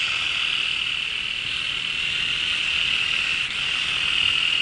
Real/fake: real